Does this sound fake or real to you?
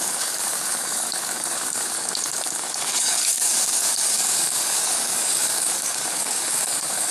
fake